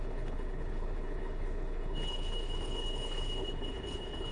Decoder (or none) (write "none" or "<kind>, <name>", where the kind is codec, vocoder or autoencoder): codec, HILCodec